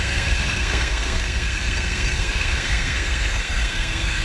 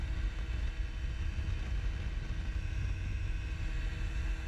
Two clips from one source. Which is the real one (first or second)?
second